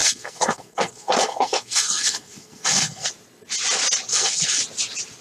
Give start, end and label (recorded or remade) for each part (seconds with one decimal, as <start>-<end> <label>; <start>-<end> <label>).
0.0-3.1 remade; 3.1-4.1 recorded; 4.1-4.6 remade; 4.6-5.2 recorded